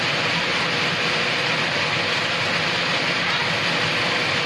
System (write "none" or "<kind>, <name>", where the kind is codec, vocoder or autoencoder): none